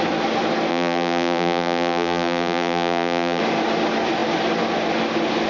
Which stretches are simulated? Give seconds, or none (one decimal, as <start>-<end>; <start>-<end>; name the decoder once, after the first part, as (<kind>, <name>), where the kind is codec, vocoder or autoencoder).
0.7-3.4 (vocoder, BigVGAN v2)